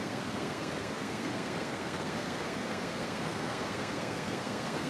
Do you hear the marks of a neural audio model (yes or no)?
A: yes